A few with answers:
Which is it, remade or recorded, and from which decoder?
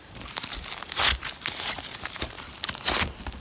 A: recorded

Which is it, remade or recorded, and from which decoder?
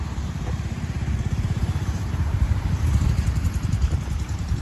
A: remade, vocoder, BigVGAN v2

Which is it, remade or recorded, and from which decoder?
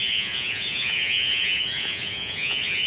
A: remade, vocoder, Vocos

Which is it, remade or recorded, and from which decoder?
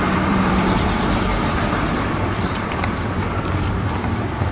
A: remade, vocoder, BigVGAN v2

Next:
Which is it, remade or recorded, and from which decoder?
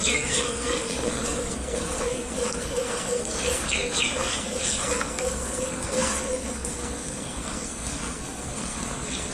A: remade, codec, SNAC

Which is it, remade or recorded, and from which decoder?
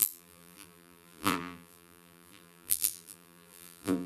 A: remade, vocoder, BigVGAN v2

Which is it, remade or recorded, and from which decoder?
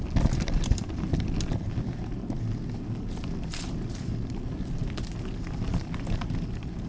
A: recorded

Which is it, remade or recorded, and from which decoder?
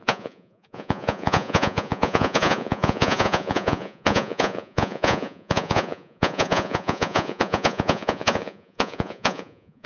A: remade, vocoder, Vocos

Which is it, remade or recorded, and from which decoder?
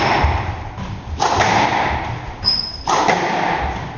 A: recorded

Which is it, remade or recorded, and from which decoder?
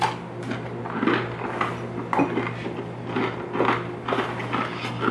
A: recorded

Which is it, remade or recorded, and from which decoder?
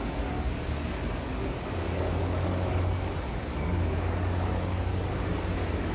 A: remade, codec, DAC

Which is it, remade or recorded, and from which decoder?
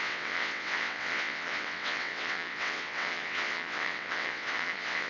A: remade, vocoder, WaveNeXt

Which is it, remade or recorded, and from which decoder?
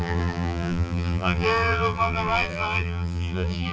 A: remade, vocoder, BigVGAN v2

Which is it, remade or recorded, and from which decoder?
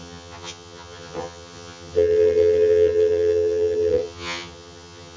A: remade, vocoder, HiFi-GAN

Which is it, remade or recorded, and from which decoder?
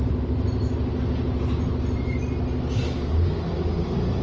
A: recorded